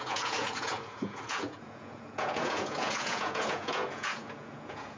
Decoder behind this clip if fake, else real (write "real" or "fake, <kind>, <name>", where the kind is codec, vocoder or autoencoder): fake, vocoder, Vocos